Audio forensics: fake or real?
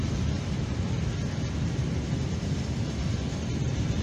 fake